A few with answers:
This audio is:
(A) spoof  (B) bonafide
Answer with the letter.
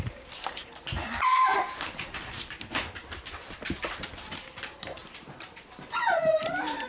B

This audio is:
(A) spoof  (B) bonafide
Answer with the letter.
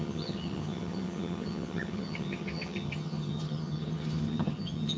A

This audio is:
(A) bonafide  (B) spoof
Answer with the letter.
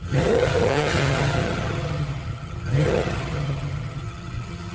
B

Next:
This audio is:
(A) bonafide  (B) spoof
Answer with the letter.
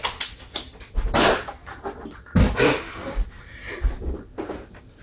A